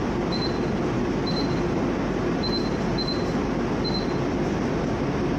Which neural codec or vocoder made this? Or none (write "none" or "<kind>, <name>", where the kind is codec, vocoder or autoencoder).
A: vocoder, BigVGAN v2